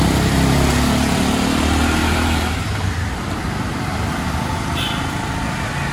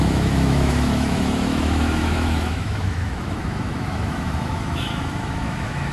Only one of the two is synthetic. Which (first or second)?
second